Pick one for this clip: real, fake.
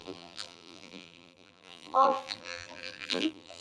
fake